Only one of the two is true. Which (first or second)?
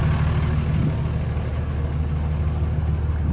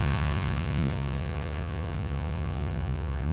first